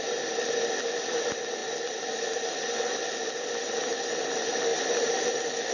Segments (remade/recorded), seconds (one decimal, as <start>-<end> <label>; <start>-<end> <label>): 0.0-5.7 recorded